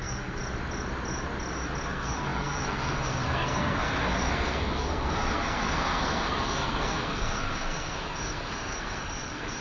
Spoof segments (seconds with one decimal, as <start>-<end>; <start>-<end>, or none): 0.0-0.4; 1.9-9.6